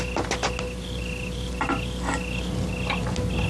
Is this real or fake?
real